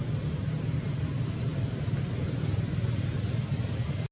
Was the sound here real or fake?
real